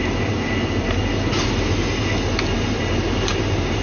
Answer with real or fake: real